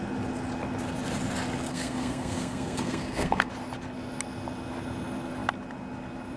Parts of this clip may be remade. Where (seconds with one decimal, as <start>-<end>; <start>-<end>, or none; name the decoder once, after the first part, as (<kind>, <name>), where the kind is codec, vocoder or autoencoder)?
1.7-3.5 (codec, SNAC)